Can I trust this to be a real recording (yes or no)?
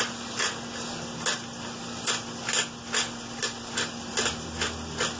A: yes